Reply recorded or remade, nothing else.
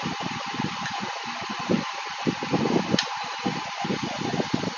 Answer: recorded